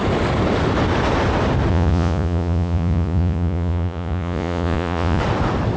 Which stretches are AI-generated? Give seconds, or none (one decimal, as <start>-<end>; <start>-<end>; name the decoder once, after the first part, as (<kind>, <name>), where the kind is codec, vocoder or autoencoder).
1.7-5.2 (vocoder, Vocos)